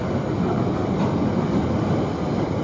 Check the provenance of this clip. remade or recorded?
recorded